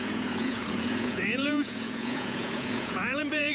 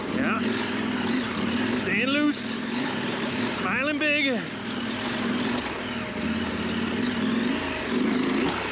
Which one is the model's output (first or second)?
first